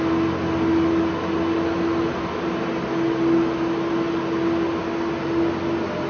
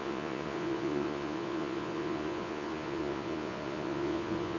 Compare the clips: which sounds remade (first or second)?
second